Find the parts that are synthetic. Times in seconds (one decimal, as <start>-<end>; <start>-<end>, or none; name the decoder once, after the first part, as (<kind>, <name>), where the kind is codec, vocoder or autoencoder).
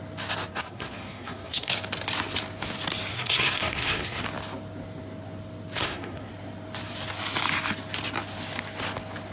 0.5-1.7 (codec, SNAC); 3.1-4.2; 5.8-6.3